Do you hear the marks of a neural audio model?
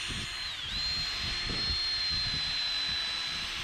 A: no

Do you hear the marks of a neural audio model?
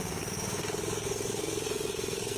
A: yes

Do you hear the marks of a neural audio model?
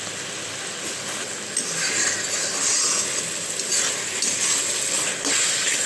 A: no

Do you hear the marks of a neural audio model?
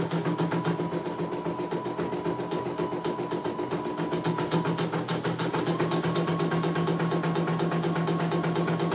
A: no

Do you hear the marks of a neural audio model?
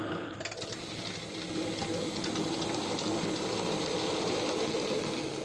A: no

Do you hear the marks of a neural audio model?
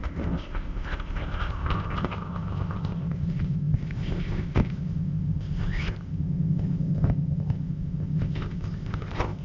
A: yes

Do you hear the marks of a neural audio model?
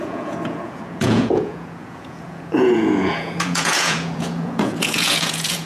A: yes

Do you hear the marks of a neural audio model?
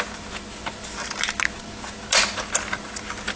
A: no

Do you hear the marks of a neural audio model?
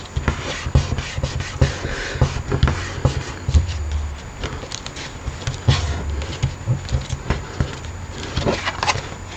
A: no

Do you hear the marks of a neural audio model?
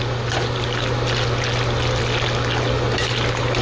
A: no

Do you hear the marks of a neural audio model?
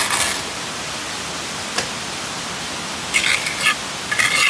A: no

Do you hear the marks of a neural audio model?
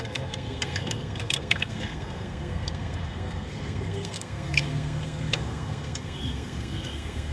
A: yes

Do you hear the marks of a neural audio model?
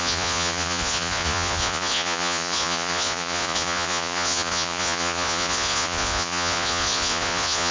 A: yes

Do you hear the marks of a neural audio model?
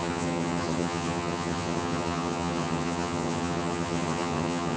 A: yes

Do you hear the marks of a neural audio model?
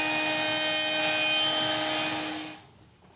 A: no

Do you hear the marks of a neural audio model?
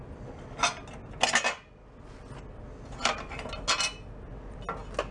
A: no